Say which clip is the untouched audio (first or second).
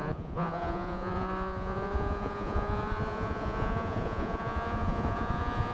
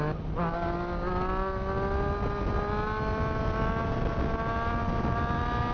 second